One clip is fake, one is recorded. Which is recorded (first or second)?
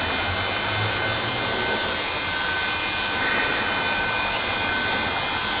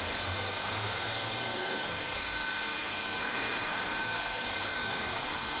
first